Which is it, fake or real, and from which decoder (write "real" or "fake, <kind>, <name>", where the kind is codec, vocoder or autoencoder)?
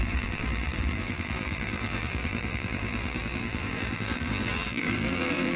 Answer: fake, vocoder, BigVGAN v2